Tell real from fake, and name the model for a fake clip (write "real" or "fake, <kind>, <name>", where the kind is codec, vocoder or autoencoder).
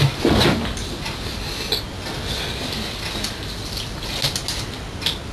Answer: real